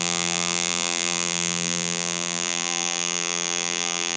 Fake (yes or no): yes